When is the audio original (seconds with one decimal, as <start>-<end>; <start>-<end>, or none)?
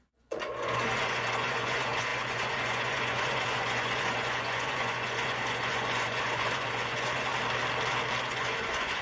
7.3-8.2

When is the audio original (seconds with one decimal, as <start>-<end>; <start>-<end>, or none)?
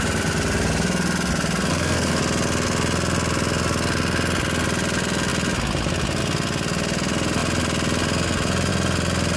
0.0-1.7; 2.2-9.4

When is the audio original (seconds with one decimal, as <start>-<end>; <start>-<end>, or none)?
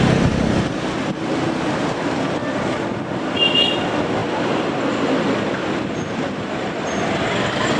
0.0-7.8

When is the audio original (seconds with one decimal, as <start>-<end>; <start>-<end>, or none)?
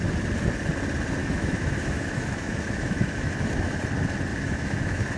0.0-1.2; 3.8-4.3